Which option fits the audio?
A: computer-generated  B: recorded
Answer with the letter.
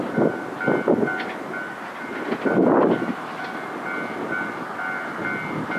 B